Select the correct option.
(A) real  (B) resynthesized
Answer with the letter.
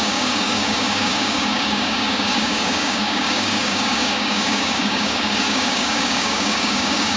B